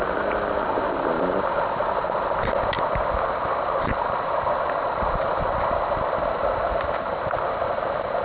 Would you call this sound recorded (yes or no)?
yes